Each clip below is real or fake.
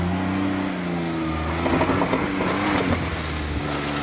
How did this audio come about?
real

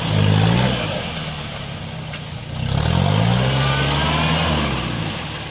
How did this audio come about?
real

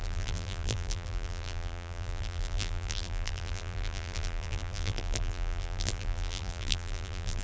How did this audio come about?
fake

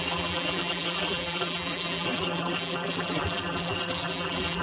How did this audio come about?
fake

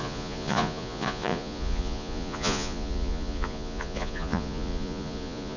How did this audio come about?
fake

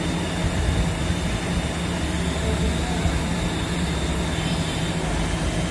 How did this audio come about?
real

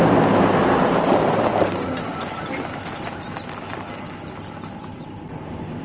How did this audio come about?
real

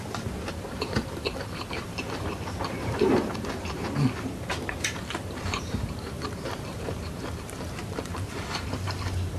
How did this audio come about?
fake